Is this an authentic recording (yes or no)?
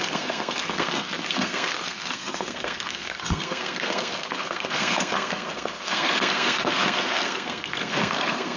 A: no